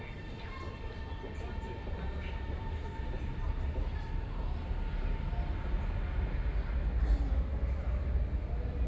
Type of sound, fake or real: real